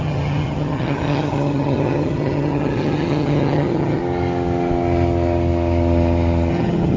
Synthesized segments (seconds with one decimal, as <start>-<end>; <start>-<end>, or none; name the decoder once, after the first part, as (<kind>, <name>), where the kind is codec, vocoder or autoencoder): 0.0-4.0 (vocoder, HiFi-GAN); 6.5-7.0